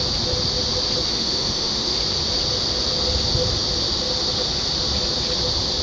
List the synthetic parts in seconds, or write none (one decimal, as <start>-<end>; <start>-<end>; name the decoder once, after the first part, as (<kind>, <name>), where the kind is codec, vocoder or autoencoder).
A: 1.1-2.0 (autoencoder, DAC-VAE)